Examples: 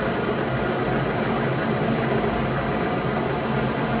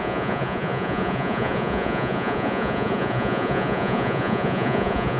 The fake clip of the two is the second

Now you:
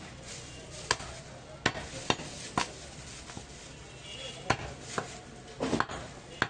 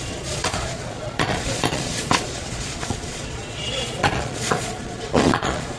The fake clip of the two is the second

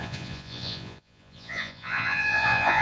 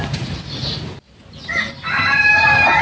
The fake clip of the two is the first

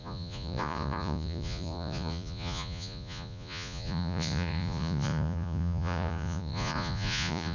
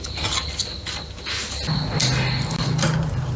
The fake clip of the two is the first